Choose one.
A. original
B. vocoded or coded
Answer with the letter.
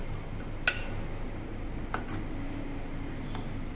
A